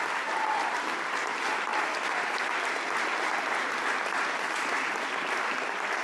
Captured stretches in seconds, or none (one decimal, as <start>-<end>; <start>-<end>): 0.0-6.0